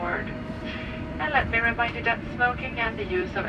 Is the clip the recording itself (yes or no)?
no